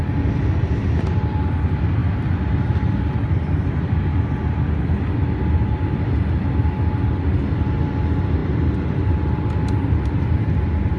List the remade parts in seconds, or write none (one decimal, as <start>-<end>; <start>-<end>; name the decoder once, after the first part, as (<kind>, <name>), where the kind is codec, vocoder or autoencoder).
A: none